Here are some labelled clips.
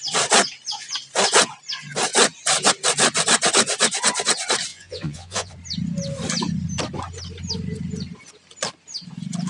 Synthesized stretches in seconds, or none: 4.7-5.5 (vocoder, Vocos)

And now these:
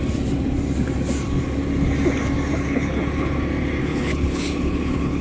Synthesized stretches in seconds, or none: 2.5-3.4 (codec, HILCodec); 3.8-5.2

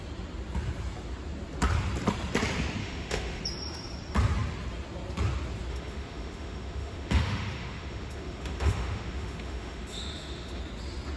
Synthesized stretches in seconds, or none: 2.8-3.4 (autoencoder, DAC-VAE); 5.7-10.6

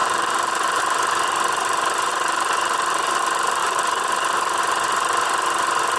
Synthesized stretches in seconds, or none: 0.0-0.8 (vocoder, BigVGAN v2); 2.1-3.2; 3.6-4.6

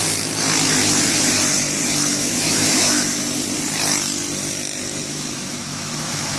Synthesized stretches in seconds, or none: 2.1-3.2 (autoencoder, DAC-VAE); 5.1-6.4

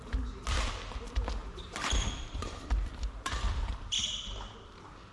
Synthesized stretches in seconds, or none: 1.4-4.3 (vocoder, BigVGAN v2)